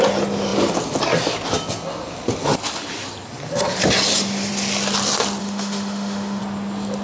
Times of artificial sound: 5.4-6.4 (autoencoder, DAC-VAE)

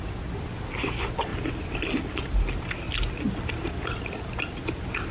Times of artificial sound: none

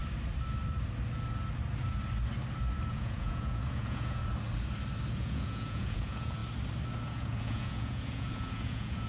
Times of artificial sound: 2.9-4.2 (vocoder, Vocos); 5.1-6.4; 7.0-9.1